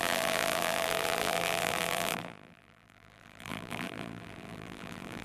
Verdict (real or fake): fake